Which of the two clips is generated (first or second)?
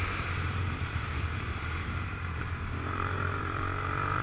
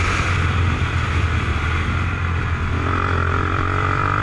first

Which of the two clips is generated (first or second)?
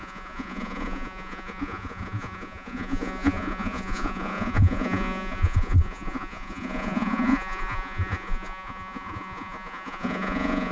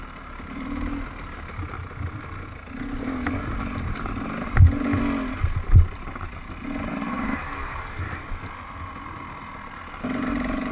first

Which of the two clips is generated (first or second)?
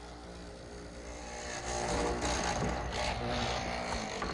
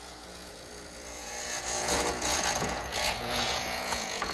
second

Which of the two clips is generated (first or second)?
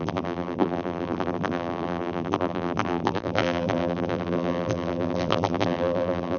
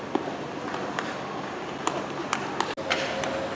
first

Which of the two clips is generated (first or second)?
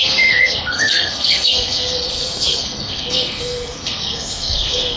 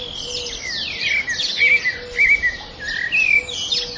first